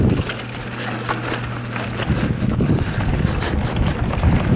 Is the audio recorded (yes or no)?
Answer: yes